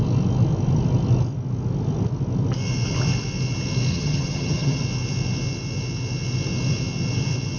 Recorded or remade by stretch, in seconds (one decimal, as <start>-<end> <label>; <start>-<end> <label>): 0.0-3.9 recorded; 3.9-4.8 remade; 4.8-7.6 recorded